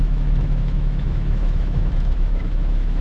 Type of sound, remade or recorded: remade